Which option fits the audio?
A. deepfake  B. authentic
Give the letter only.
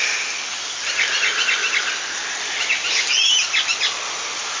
B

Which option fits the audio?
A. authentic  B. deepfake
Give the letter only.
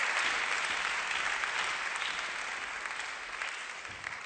A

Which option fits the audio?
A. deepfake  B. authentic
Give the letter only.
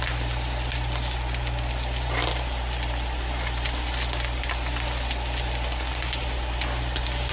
B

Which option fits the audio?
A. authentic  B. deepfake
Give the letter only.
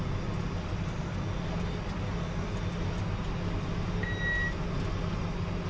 A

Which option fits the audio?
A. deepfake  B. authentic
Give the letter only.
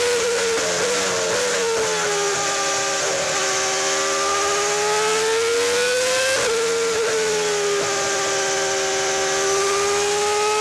B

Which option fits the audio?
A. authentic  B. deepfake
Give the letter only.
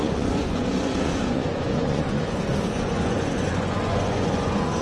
B